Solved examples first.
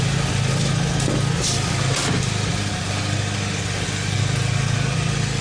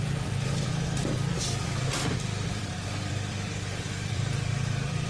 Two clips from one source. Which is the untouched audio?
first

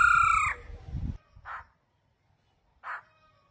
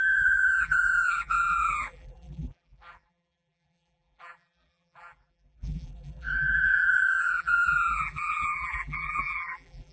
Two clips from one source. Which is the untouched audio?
first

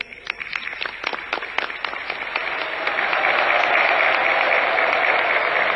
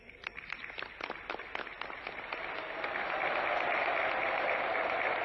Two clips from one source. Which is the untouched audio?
first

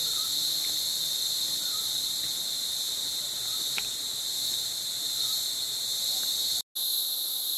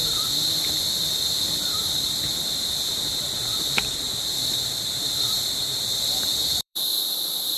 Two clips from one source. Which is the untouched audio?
first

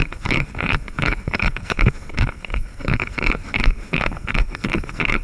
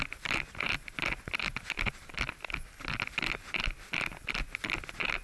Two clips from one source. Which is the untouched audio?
second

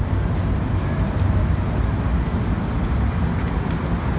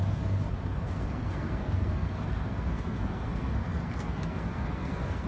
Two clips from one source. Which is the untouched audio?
first